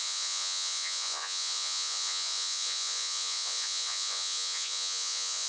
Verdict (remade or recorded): remade